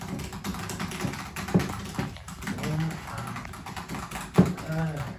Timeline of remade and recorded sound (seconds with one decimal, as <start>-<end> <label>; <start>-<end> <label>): 0.0-5.2 recorded